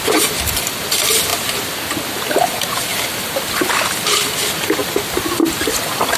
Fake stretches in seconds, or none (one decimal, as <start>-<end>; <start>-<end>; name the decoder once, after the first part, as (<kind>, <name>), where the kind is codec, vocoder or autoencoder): none